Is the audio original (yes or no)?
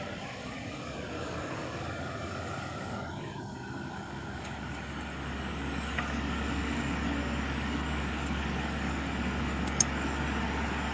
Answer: no